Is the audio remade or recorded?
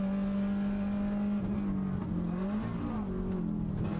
recorded